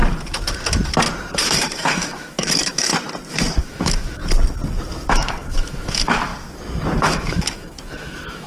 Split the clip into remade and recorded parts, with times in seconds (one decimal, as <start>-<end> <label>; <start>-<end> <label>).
0.0-1.3 recorded; 1.3-2.9 remade; 2.9-3.6 recorded; 3.6-4.2 remade; 4.2-5.1 recorded; 5.1-6.3 remade; 6.3-7.0 recorded; 7.0-8.5 remade